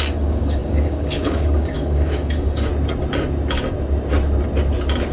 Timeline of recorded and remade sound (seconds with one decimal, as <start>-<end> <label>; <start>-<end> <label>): 0.0-2.7 remade; 2.7-5.1 recorded